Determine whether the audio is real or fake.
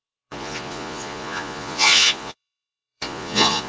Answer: fake